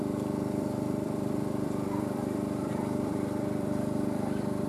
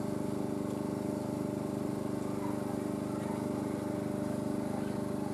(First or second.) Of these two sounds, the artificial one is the first